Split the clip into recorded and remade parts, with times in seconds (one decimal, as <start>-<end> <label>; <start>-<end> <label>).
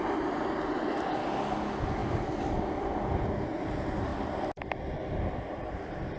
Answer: 0.0-6.2 recorded